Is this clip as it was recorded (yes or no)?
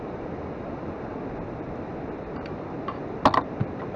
yes